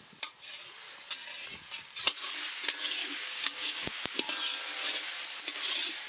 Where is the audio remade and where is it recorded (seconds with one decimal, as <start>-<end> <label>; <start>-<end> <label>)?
0.0-3.0 recorded; 3.0-4.2 remade; 4.2-6.1 recorded